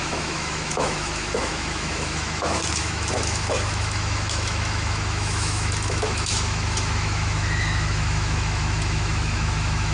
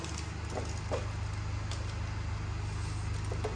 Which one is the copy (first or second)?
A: first